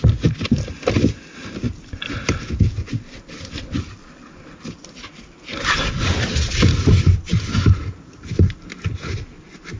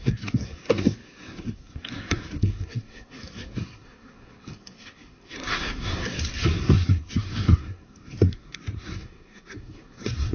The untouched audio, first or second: first